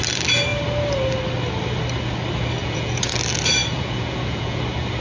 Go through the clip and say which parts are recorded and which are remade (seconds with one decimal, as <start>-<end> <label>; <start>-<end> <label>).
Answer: 0.0-2.6 recorded; 2.6-3.1 remade; 3.1-3.6 recorded; 3.6-4.6 remade; 4.6-5.0 recorded

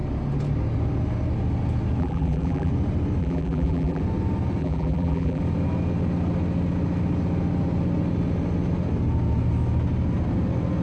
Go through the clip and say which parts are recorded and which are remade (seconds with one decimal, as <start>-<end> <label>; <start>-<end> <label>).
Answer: 0.0-2.0 recorded; 2.0-2.7 remade; 2.7-3.2 recorded; 3.2-4.0 remade; 4.0-4.6 recorded; 4.6-5.4 remade; 5.4-10.8 recorded

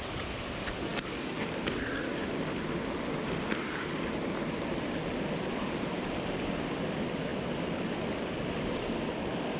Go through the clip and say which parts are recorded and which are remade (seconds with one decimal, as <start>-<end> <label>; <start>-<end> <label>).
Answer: 0.0-9.6 recorded

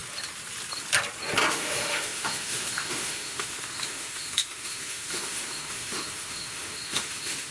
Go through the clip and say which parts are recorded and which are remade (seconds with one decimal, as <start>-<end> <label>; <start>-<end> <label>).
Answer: 0.0-1.5 recorded; 1.5-7.5 remade

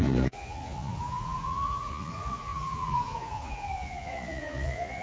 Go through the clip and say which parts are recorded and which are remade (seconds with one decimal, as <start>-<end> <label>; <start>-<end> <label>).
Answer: 0.0-5.0 remade

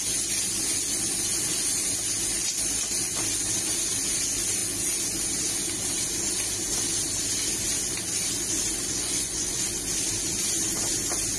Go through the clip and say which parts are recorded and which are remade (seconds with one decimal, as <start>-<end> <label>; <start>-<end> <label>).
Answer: 0.0-8.9 recorded; 8.9-9.6 remade; 9.6-11.4 recorded